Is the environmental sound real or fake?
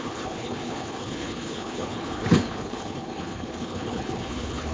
fake